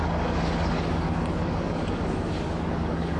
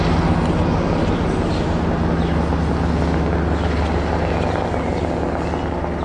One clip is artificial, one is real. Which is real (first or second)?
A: second